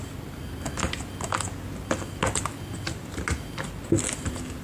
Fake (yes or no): no